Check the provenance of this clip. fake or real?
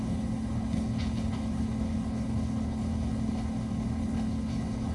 fake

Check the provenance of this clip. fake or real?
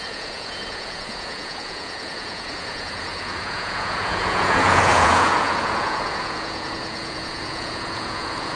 fake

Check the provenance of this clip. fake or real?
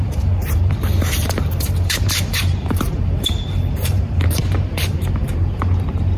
fake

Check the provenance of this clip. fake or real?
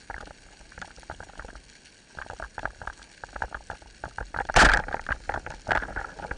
real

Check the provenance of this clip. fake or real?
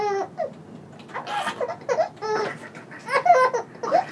real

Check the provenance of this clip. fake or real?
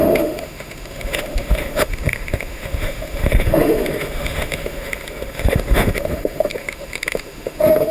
fake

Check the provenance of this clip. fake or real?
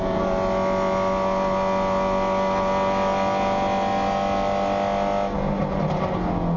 real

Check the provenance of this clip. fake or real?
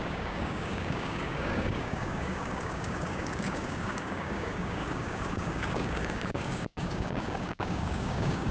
fake